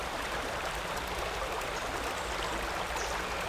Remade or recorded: recorded